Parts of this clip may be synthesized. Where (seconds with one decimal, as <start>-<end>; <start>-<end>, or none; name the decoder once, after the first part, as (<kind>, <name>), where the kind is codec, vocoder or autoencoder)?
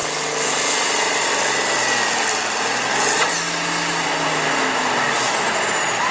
none